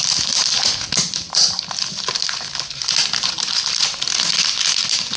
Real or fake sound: real